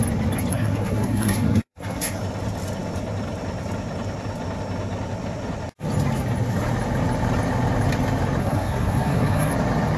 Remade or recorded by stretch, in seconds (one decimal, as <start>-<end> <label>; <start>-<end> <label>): 0.0-0.5 recorded; 0.5-2.2 remade; 2.2-8.4 recorded; 8.4-9.5 remade; 9.5-10.0 recorded